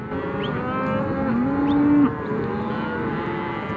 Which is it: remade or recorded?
recorded